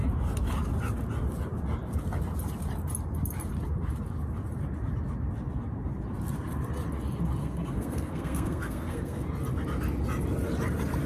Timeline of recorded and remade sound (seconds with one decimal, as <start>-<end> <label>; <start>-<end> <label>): 0.0-7.4 recorded; 7.4-9.2 remade; 9.2-11.1 recorded